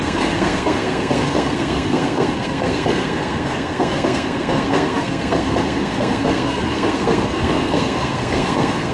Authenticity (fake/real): fake